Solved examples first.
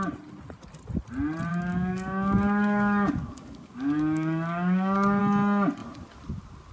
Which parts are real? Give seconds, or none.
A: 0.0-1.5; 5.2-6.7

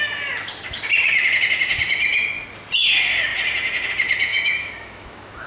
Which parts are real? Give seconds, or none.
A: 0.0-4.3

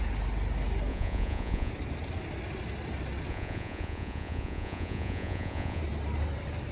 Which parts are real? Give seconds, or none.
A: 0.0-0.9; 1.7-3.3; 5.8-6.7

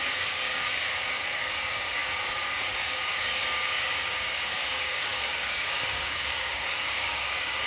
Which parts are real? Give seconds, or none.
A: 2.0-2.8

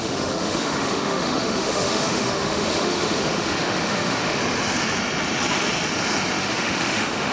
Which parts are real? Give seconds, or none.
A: 4.4-6.4

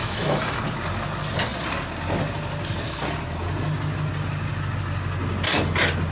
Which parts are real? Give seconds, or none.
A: 0.6-6.1

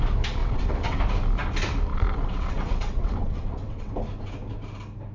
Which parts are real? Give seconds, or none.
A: 0.0-0.4; 1.0-1.9; 3.9-5.1